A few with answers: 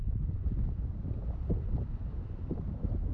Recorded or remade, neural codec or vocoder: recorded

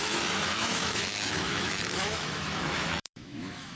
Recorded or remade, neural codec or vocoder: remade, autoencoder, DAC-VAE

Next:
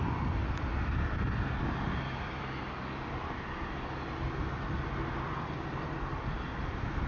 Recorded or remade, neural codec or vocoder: recorded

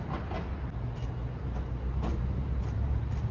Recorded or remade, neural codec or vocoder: recorded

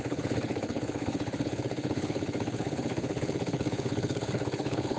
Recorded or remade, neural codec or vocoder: remade, codec, HILCodec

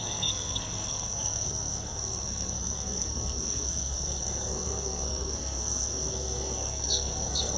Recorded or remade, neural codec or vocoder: remade, codec, SNAC